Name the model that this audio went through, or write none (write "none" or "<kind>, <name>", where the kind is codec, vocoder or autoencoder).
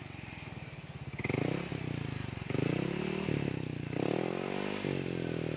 none